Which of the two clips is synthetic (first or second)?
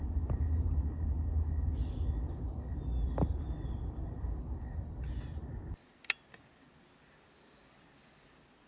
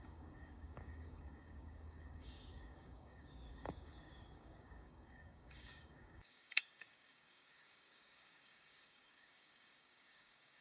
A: second